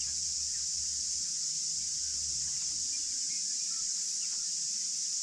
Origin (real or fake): real